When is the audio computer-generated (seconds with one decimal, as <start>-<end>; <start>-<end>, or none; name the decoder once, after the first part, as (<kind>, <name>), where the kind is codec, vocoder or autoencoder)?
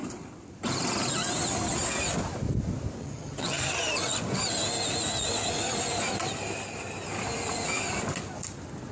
3.0-3.8 (vocoder, HiFi-GAN)